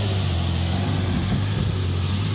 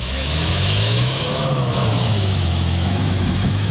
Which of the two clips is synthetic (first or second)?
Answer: second